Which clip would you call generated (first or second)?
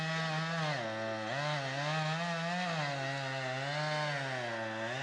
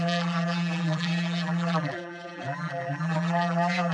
second